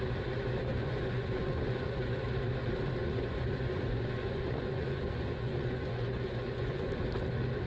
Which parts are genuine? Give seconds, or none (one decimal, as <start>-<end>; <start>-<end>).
0.0-0.7; 2.2-3.0; 6.9-7.7